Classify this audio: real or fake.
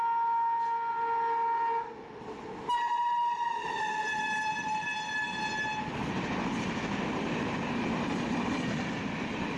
real